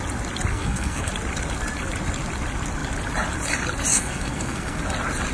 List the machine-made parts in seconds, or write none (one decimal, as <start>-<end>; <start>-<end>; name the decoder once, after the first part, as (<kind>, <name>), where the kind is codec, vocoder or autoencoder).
0.5-1.1 (codec, SNAC); 3.9-4.8